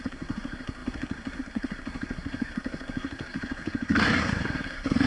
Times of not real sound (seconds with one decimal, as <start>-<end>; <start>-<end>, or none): 0.0-5.1